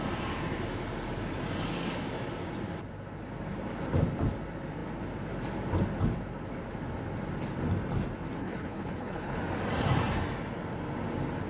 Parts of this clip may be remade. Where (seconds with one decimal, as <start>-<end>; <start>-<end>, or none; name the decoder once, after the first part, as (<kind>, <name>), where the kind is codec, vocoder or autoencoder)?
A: 8.4-9.4 (codec, HILCodec)